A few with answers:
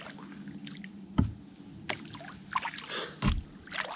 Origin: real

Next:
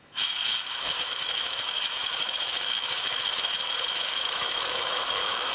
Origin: fake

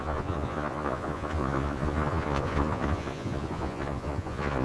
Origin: fake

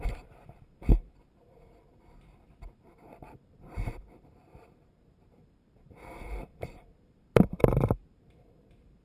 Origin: fake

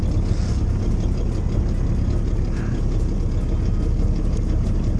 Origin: real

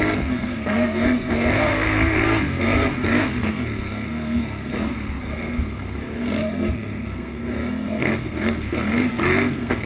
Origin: fake